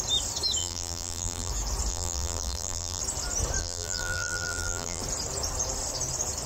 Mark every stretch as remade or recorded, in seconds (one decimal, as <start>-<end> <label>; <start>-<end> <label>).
0.0-0.6 recorded; 0.6-1.5 remade; 1.5-1.9 recorded; 1.9-3.0 remade; 3.0-3.6 recorded; 3.6-5.0 remade; 5.0-6.5 recorded